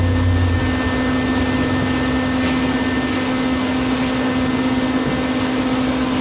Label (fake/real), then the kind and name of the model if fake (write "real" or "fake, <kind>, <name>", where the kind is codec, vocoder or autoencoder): real